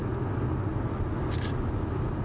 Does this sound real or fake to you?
real